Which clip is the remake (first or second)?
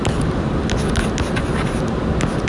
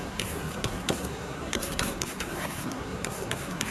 second